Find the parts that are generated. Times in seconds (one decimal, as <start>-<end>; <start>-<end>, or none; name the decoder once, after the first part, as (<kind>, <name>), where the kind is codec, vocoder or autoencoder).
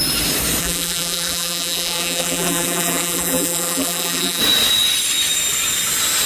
0.6-4.4 (vocoder, BigVGAN v2)